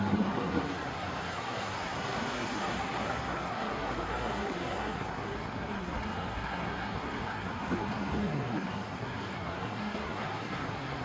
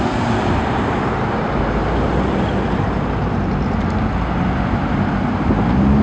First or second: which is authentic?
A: second